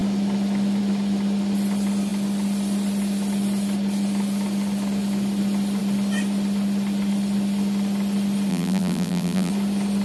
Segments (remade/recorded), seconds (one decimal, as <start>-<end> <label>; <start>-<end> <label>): 0.0-8.5 recorded; 8.5-9.5 remade; 9.5-10.0 recorded